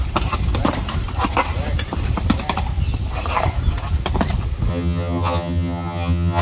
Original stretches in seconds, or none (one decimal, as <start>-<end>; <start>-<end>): 0.0-4.7